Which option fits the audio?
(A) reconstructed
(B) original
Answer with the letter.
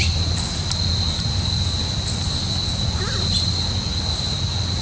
B